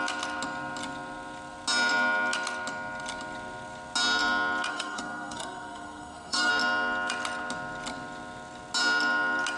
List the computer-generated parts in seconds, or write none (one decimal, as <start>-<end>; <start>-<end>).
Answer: 4.7-6.5